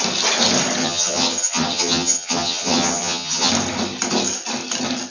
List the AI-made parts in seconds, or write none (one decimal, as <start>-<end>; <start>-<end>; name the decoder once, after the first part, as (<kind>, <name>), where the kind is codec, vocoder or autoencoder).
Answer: 0.8-3.5 (vocoder, HiFi-GAN)